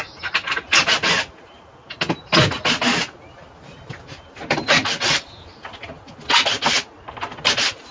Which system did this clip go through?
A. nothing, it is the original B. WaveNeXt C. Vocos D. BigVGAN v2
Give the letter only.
A